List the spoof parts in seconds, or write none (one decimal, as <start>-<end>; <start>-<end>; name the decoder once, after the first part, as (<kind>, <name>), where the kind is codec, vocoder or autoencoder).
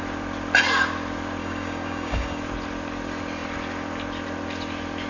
1.4-2.4 (codec, DAC)